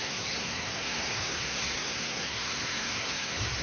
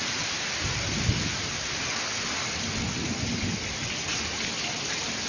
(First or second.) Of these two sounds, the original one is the second